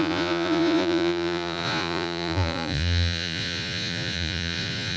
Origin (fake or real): fake